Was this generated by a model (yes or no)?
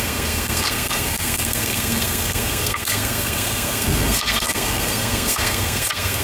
yes